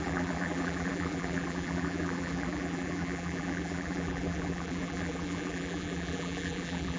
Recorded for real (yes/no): no